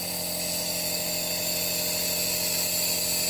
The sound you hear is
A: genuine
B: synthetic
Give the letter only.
A